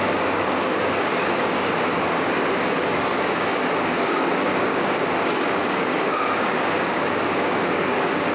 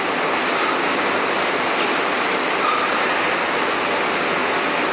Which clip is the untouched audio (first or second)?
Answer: second